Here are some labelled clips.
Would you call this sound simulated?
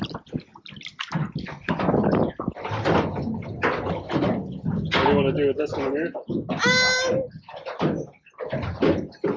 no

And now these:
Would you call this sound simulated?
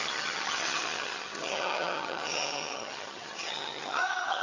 yes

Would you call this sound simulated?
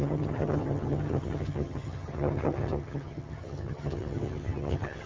yes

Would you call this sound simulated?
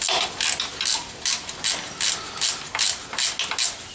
no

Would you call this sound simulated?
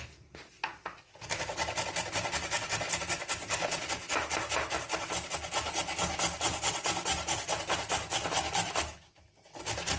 no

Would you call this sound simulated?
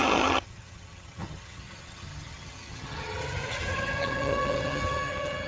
yes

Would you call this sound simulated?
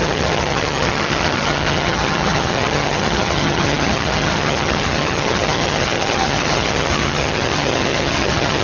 yes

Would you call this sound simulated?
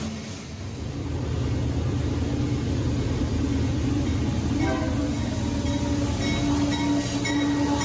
no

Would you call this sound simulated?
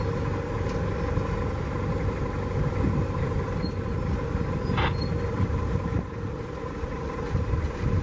no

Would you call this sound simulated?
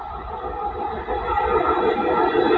no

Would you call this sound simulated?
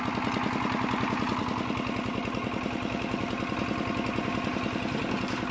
no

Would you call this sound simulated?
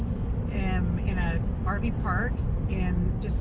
no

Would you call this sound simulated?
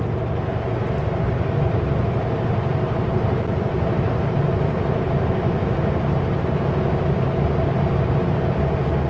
no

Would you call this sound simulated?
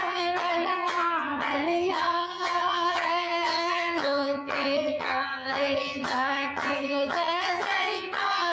yes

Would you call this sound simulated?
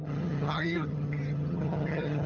yes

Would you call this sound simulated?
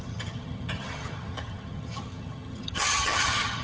yes